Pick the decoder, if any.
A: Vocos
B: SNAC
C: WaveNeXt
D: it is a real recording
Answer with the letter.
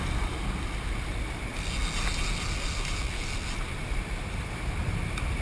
D